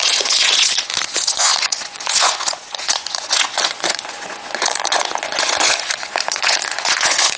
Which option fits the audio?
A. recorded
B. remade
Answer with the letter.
B